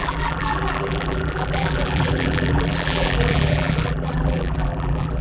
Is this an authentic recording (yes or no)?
no